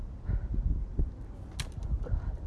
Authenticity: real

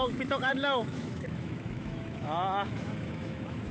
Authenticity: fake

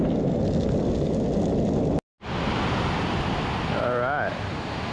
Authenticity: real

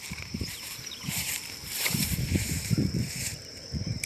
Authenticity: fake